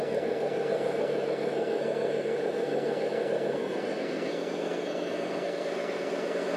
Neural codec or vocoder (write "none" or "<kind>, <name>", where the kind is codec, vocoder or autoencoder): codec, SNAC